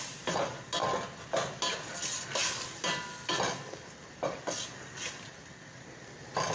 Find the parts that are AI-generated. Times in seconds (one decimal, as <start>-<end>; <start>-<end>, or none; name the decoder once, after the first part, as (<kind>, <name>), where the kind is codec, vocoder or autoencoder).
none